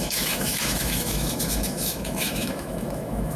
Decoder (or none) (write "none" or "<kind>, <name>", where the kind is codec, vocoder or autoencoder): autoencoder, DAC-VAE